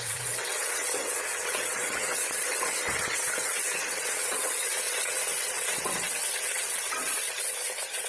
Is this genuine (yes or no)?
no